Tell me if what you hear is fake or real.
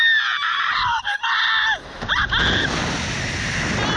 real